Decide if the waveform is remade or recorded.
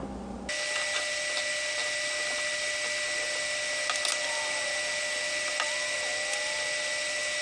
recorded